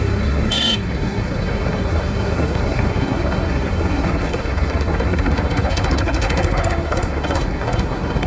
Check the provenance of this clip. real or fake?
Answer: fake